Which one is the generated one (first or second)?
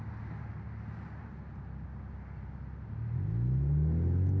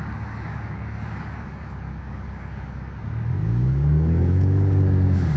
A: second